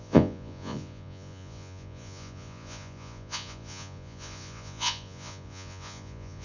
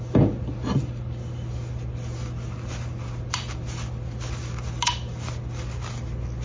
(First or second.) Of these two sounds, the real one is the second